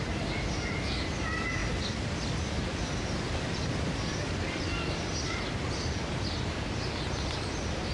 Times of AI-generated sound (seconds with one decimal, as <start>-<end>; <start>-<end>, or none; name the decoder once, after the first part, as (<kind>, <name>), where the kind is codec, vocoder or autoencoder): none